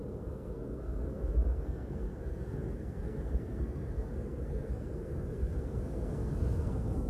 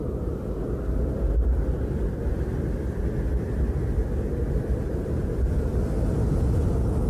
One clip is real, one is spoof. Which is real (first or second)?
second